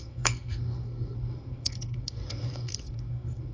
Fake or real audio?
fake